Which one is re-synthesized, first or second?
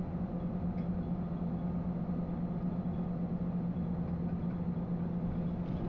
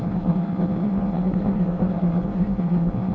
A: second